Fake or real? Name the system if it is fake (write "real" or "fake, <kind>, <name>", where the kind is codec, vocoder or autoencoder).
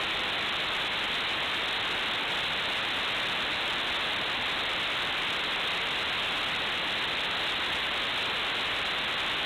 real